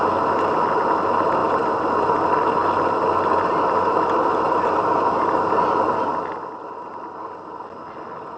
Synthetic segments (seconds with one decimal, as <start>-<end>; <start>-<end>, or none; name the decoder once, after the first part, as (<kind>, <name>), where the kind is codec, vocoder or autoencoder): 1.4-1.9 (vocoder, BigVGAN v2)